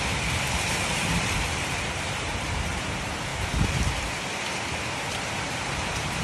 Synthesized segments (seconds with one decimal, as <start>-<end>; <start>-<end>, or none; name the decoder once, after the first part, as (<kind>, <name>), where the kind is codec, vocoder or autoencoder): 0.0-3.3 (vocoder, BigVGAN v2); 4.8-6.2